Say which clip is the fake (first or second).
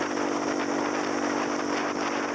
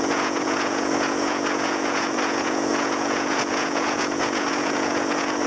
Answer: second